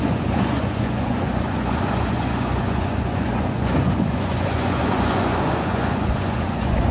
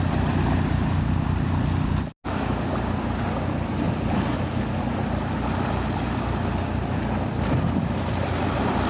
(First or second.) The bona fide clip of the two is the second